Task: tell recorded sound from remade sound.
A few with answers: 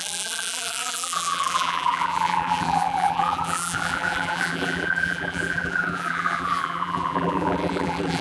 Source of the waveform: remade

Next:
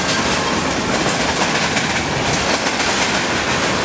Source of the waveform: recorded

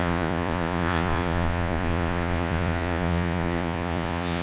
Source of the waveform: remade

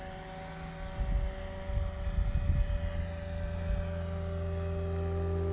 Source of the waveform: recorded